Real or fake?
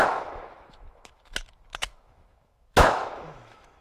fake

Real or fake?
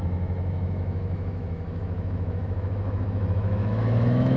fake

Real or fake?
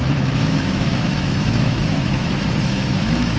fake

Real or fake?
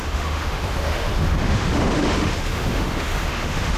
fake